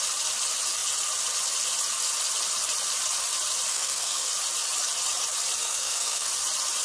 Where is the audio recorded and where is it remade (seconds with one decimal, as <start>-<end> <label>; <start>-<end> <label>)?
0.0-3.7 recorded; 3.7-4.3 remade; 4.3-5.6 recorded; 5.6-6.3 remade; 6.3-6.8 recorded

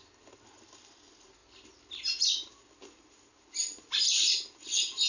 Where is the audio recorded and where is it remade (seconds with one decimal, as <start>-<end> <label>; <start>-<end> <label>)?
0.0-5.1 recorded

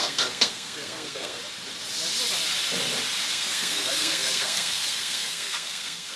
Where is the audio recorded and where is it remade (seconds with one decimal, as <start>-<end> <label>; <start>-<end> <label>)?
0.0-1.4 remade; 1.4-3.3 recorded; 3.3-6.2 remade